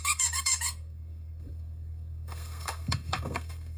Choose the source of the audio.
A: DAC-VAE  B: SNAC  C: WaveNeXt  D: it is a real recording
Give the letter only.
B